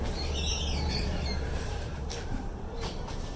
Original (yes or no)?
no